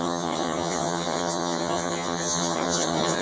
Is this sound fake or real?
fake